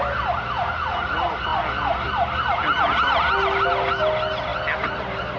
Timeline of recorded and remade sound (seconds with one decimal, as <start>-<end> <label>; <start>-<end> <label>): 0.0-5.4 recorded